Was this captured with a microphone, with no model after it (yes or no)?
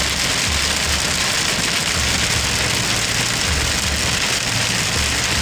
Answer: yes